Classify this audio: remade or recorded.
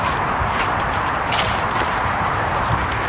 recorded